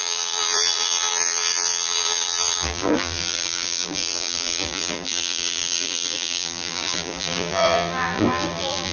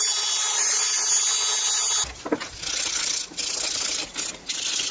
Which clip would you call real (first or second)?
second